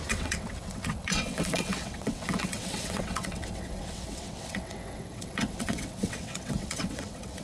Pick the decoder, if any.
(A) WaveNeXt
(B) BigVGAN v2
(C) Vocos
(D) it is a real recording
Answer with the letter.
A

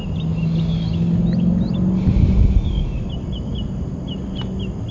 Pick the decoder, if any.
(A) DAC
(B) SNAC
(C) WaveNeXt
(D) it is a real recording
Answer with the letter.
D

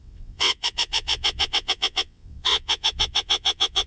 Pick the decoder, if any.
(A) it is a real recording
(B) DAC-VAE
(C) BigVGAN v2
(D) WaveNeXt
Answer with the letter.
D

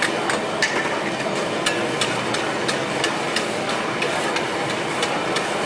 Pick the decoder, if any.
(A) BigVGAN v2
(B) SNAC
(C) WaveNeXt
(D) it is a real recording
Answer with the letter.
D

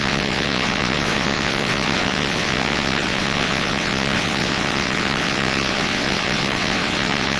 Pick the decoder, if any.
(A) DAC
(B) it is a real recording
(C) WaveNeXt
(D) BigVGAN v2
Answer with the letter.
C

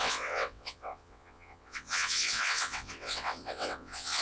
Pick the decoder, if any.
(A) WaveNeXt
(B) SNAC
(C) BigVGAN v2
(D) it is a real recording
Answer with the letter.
A